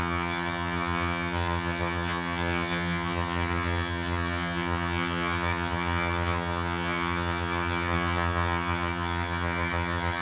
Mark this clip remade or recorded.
remade